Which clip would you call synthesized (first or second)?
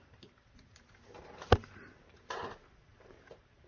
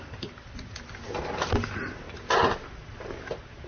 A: first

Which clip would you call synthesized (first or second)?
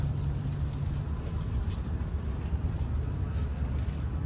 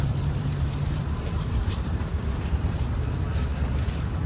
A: second